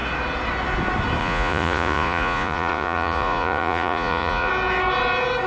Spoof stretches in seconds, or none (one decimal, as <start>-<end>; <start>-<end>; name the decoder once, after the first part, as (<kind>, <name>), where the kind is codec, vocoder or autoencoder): 1.2-4.5 (vocoder, Vocos)